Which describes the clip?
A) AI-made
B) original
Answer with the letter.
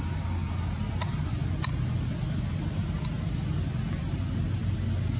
B